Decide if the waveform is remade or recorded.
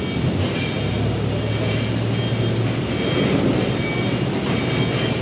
recorded